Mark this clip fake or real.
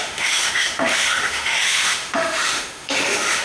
fake